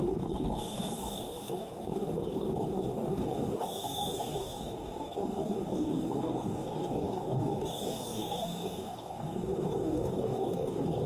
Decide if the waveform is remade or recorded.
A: remade